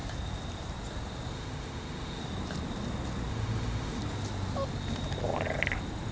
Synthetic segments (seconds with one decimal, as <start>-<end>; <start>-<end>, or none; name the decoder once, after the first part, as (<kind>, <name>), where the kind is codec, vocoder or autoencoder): 1.3-2.2 (autoencoder, DAC-VAE); 3.3-4.0